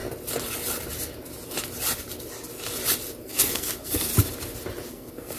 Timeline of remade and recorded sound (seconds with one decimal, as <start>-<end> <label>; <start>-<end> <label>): 0.0-3.2 recorded; 3.2-4.1 remade; 4.1-4.9 recorded; 4.9-5.4 remade